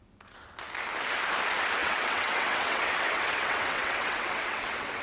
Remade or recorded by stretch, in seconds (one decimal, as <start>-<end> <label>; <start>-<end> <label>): 0.0-1.8 recorded; 1.8-5.0 remade